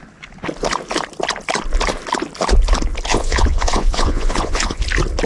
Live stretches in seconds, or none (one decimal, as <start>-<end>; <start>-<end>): 0.0-3.1; 4.8-5.3